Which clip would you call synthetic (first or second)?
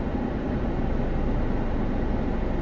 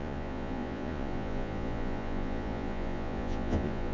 second